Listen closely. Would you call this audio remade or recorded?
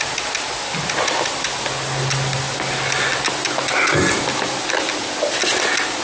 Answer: recorded